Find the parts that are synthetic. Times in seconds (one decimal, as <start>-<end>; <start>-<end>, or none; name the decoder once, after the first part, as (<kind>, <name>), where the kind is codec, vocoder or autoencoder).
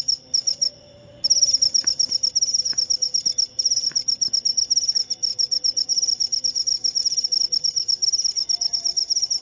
5.3-5.9 (vocoder, BigVGAN v2)